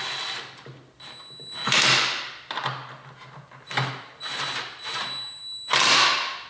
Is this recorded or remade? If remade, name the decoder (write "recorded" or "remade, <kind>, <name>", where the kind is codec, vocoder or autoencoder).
recorded